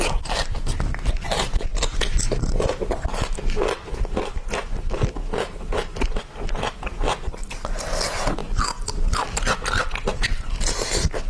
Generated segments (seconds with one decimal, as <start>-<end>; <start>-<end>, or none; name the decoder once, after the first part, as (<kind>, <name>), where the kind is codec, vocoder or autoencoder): none